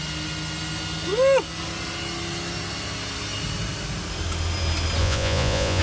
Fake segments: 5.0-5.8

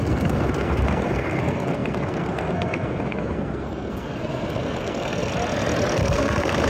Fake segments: 0.0-5.3; 6.0-6.7

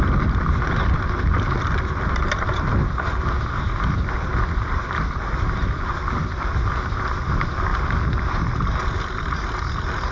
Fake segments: none

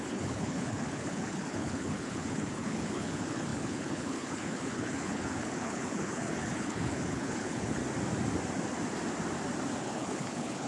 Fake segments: 0.0-7.8; 9.8-10.7

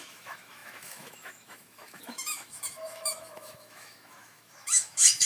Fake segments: 0.0-5.2